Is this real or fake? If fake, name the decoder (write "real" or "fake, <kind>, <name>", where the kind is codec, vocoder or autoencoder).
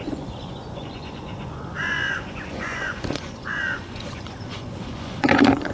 fake, vocoder, Vocos